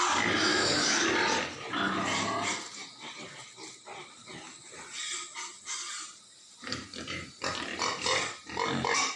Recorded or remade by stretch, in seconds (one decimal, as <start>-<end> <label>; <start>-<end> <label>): 0.0-0.5 recorded; 0.5-1.0 remade; 1.0-9.2 recorded